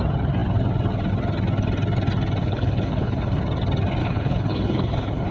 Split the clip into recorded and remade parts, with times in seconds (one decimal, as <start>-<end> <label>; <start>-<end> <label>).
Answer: 0.0-2.4 recorded; 2.4-3.4 remade; 3.4-4.0 recorded; 4.0-5.3 remade